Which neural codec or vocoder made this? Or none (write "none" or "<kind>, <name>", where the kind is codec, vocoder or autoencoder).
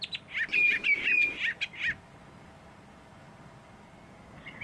none